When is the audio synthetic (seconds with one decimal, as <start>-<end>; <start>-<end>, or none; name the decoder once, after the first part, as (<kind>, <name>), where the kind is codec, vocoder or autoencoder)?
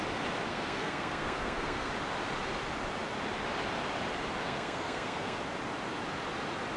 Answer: 0.5-1.9 (codec, SNAC); 4.4-5.4